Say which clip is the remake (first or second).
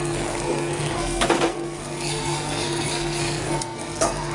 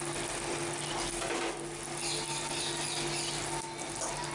first